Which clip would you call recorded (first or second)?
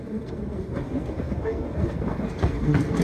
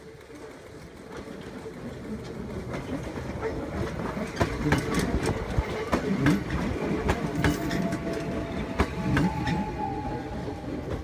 second